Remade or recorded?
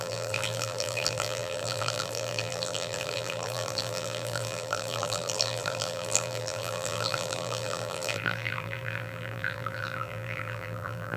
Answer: remade